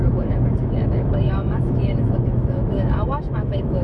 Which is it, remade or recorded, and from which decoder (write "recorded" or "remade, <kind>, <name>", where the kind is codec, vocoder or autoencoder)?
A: remade, autoencoder, DAC-VAE